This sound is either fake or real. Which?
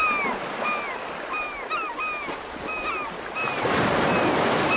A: real